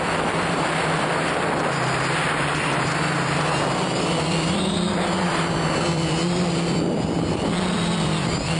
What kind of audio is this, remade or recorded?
remade